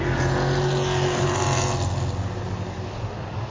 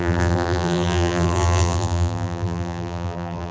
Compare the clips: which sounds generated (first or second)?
second